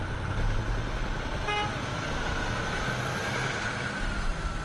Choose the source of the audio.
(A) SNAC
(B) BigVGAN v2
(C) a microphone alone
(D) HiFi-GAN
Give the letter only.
C